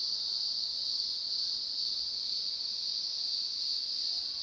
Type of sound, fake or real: real